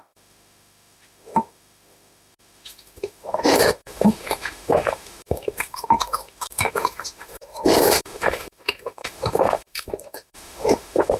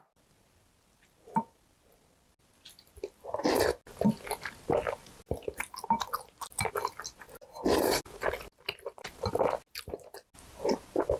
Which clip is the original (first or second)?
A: second